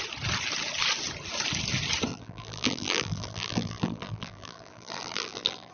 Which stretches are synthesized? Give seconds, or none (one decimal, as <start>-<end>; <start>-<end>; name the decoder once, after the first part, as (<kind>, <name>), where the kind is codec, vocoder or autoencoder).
2.1-5.7 (vocoder, BigVGAN v2)